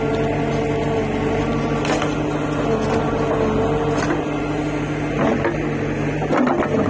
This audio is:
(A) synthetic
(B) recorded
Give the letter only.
B